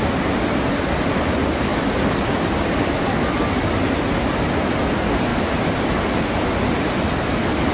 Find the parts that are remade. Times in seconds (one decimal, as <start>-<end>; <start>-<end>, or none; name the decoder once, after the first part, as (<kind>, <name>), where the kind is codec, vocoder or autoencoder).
none